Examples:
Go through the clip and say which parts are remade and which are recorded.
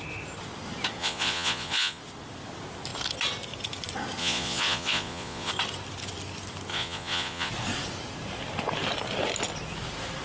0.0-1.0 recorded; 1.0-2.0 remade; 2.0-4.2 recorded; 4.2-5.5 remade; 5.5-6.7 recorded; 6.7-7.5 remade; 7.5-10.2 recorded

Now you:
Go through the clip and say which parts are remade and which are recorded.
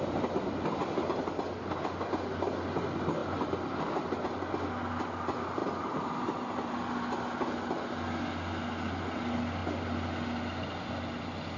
0.0-3.2 recorded; 3.2-3.8 remade; 3.8-5.6 recorded; 5.6-6.7 remade; 6.7-11.6 recorded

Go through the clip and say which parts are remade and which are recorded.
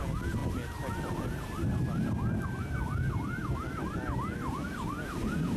0.0-5.6 recorded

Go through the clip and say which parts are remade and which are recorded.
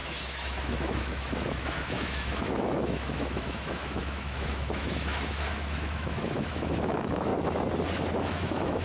0.0-7.3 remade; 7.3-8.2 recorded; 8.2-8.8 remade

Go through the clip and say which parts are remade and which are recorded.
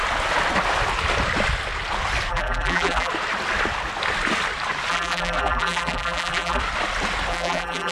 0.0-2.3 recorded; 2.3-3.1 remade; 3.1-4.9 recorded; 4.9-6.6 remade; 6.6-7.3 recorded; 7.3-7.9 remade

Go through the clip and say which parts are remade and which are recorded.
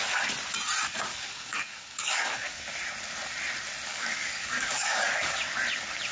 0.0-1.1 recorded; 1.1-2.7 remade; 2.7-3.9 recorded; 3.9-5.4 remade; 5.4-6.1 recorded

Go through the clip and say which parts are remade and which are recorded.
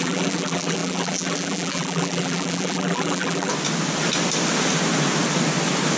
0.0-3.5 remade; 3.5-6.0 recorded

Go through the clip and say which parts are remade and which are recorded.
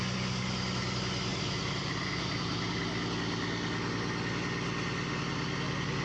0.0-1.3 recorded; 1.3-2.7 remade; 2.7-6.0 recorded